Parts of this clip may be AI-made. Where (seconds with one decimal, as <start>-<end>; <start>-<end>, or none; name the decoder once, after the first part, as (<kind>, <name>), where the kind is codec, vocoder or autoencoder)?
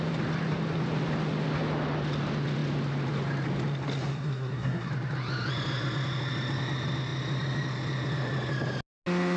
4.1-4.9 (codec, SNAC)